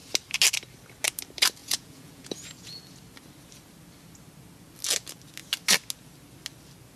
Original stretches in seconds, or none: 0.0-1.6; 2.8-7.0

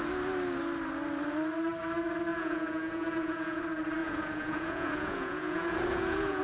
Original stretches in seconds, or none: 0.0-2.3; 3.6-4.0

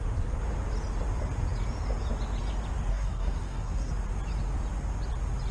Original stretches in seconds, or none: 0.0-2.9; 3.9-5.5

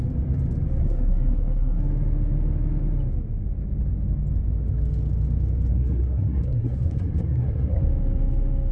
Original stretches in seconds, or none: 0.0-0.8; 1.8-5.7; 7.8-8.7

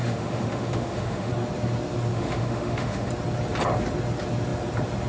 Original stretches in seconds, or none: 1.3-2.1; 3.1-5.1

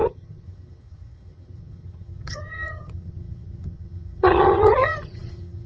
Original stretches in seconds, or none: none